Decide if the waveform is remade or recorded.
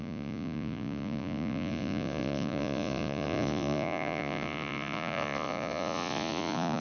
remade